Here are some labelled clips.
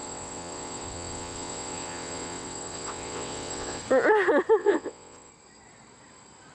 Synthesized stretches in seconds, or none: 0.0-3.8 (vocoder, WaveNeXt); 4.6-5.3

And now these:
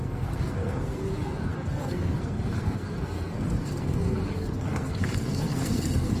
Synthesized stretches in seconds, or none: 0.0-6.2 (codec, SNAC)

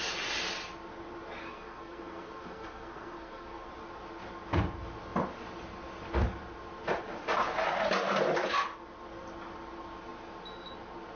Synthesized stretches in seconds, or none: 1.4-3.7 (codec, SNAC)

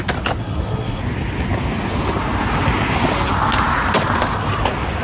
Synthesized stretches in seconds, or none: 0.4-1.0 (codec, SNAC)